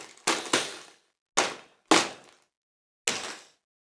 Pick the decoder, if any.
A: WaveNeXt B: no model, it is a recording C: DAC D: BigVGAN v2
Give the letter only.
B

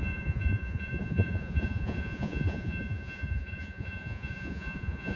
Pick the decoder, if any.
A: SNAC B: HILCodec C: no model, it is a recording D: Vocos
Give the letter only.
D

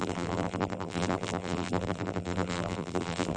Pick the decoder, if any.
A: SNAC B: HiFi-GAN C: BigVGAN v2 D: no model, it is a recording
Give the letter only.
C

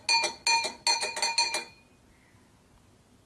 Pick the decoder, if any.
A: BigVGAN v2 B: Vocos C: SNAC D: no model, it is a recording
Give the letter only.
D